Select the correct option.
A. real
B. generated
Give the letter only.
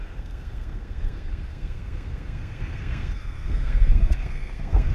B